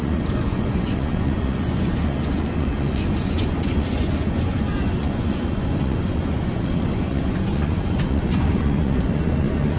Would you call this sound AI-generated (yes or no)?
yes